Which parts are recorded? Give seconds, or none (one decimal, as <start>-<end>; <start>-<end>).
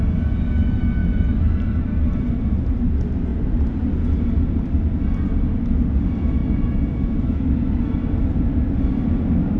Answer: 0.0-1.0; 2.9-3.3; 3.8-9.6